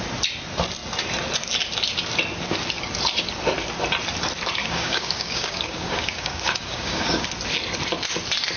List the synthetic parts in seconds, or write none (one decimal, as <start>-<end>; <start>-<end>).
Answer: 4.6-7.3